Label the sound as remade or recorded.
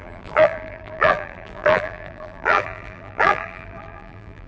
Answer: remade